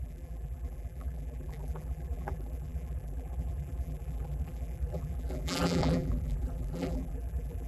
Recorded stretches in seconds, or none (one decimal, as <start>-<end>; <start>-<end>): none